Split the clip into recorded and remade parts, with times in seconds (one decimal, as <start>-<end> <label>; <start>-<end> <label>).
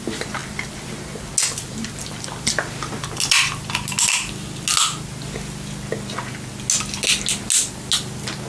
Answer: 0.0-8.5 recorded